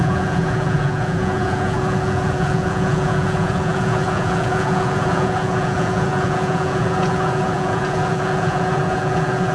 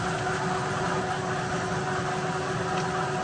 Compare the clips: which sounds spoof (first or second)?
first